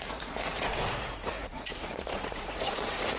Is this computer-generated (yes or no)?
yes